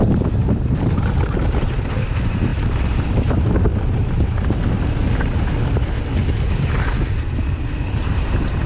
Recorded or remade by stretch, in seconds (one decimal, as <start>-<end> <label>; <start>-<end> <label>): 0.0-5.0 remade; 5.0-7.9 recorded; 7.9-8.7 remade